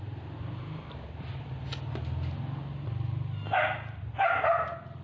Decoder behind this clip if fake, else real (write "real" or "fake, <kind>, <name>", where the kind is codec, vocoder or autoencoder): real